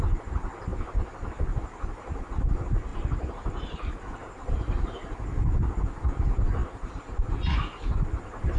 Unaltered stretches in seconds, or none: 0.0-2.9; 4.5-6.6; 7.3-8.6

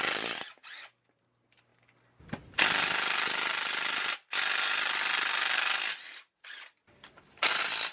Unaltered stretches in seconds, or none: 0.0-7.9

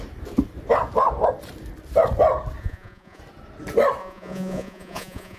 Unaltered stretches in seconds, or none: 0.0-2.6; 3.2-4.0

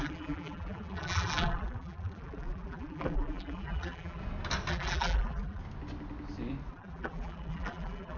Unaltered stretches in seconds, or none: 4.2-4.7; 5.6-6.7